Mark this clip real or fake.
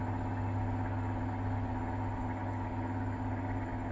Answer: real